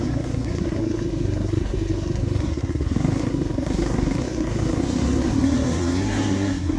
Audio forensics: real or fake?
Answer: fake